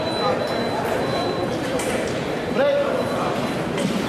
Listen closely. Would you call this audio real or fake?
fake